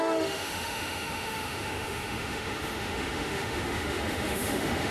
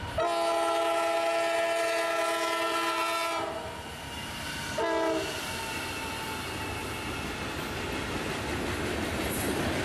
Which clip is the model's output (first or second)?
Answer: first